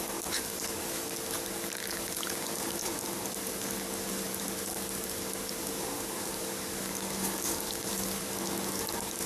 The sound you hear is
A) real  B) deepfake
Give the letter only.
B